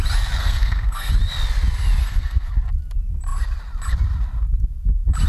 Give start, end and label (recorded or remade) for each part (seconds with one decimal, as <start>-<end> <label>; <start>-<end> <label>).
0.0-0.4 recorded; 0.4-1.1 remade; 1.1-2.0 recorded; 2.0-2.5 remade; 2.5-5.3 recorded